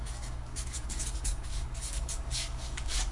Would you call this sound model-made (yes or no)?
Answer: yes